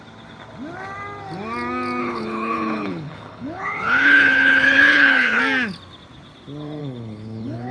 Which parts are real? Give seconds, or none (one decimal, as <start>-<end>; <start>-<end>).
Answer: 0.0-2.0; 5.4-6.8